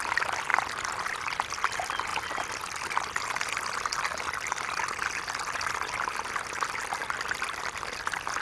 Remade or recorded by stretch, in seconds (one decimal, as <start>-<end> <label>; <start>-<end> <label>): 0.0-8.4 recorded